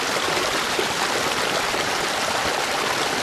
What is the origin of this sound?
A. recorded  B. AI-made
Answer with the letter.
A